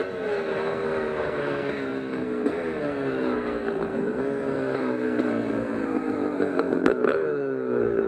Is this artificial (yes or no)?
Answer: yes